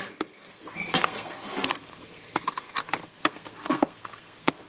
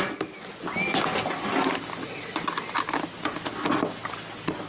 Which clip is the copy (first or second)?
first